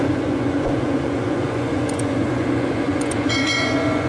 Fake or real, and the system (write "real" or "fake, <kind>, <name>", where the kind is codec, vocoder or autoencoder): fake, vocoder, Vocos